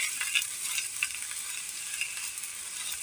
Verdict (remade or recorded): recorded